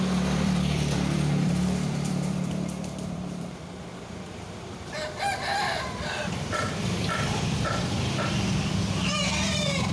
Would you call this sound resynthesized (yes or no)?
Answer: yes